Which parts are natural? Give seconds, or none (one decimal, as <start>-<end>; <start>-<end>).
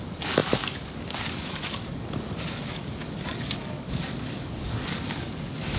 none